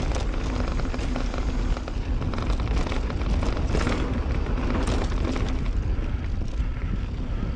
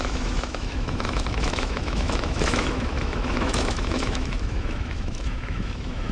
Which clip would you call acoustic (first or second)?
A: first